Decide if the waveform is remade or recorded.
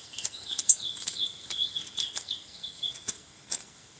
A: remade